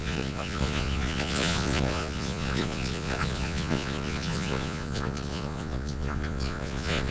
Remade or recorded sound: remade